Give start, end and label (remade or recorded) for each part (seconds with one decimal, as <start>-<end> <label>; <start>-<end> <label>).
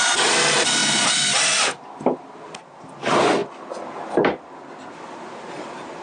0.0-6.0 recorded